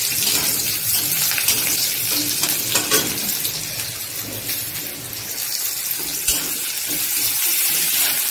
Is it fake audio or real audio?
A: real